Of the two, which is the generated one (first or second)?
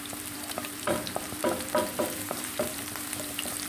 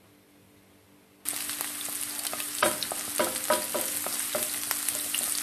first